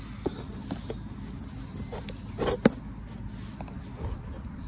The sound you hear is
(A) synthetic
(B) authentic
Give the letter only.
B